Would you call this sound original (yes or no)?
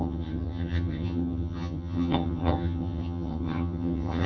no